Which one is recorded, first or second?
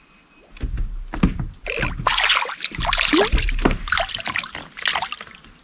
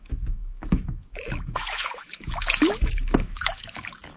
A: first